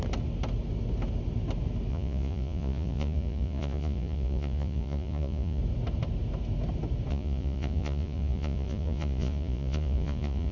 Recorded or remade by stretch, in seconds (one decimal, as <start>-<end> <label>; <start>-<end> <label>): 0.0-1.9 recorded; 1.9-5.6 remade; 5.6-7.1 recorded; 7.1-10.5 remade